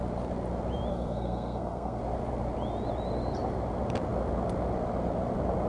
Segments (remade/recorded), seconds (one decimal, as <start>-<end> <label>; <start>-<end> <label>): 0.0-0.9 recorded; 0.9-2.0 remade; 2.0-5.7 recorded